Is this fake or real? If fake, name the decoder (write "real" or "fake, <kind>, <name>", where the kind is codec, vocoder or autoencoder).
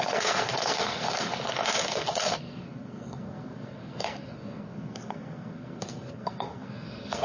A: fake, codec, SNAC